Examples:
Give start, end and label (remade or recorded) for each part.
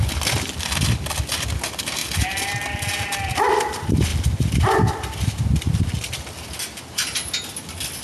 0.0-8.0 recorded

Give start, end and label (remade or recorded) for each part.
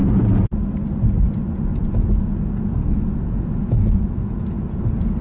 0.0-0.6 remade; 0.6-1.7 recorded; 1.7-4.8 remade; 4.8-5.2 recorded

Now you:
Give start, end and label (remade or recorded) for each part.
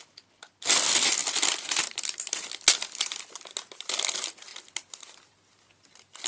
0.0-6.3 recorded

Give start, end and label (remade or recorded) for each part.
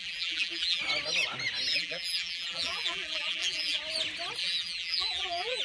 0.0-0.8 remade; 0.8-1.7 recorded; 1.7-3.8 remade; 3.8-4.4 recorded; 4.4-5.6 remade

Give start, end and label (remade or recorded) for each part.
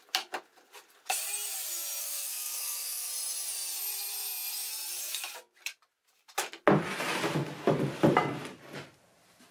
0.0-2.0 recorded; 2.0-3.1 remade; 3.1-9.5 recorded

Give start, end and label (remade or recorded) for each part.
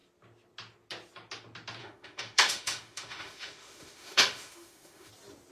0.0-1.8 recorded; 1.8-5.1 remade; 5.1-5.5 recorded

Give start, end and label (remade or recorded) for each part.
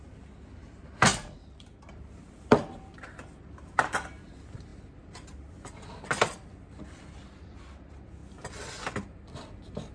0.0-8.2 remade; 8.2-8.7 recorded; 8.7-9.9 remade